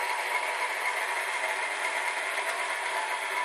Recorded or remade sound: recorded